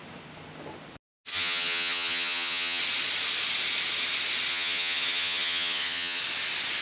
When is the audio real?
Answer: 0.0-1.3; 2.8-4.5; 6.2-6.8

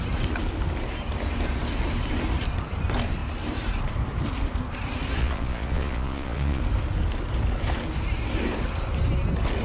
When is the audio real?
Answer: 0.0-5.2; 6.6-9.6